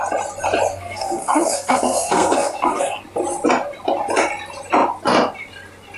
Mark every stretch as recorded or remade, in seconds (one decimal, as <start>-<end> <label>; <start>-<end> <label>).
0.0-0.7 recorded; 0.7-3.0 remade; 3.0-6.0 recorded